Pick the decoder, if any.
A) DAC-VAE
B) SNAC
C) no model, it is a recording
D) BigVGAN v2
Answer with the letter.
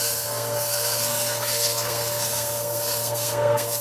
B